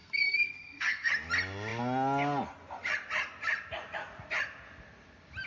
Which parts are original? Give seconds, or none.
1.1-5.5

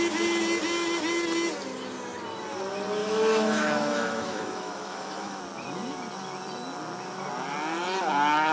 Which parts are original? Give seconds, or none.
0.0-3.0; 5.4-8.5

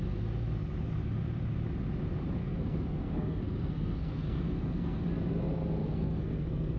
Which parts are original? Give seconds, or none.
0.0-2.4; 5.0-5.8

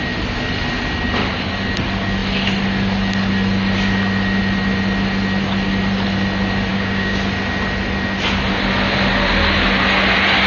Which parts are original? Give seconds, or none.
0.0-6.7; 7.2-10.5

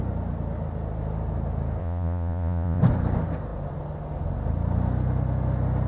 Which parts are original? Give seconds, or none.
0.0-1.8; 2.8-5.9